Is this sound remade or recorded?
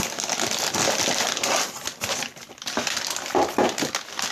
recorded